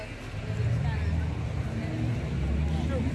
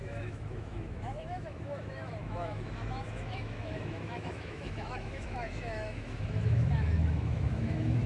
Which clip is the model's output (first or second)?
second